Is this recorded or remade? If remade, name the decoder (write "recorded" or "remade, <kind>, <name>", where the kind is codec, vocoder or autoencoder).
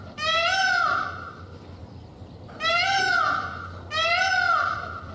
remade, vocoder, BigVGAN v2